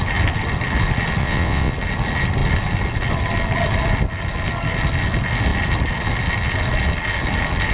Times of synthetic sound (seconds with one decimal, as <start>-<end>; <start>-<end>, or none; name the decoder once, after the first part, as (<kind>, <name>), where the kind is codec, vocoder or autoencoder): 1.2-1.7 (vocoder, WaveNeXt)